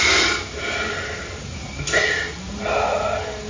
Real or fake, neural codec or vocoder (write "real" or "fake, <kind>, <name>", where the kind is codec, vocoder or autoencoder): real